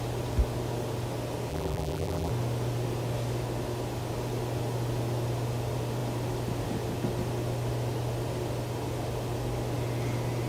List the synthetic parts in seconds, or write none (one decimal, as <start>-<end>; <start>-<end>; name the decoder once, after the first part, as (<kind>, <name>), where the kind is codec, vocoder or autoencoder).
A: 1.5-2.3 (vocoder, BigVGAN v2)

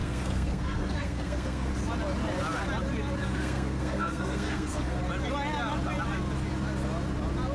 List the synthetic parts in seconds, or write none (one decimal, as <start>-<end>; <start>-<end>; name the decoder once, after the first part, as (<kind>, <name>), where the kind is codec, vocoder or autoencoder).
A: 0.0-1.7 (codec, SNAC); 3.2-5.0